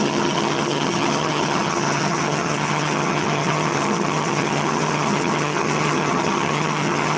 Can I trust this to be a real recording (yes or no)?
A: no